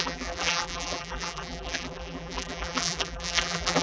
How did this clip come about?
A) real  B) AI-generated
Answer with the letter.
B